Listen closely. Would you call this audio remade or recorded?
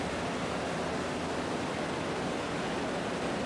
recorded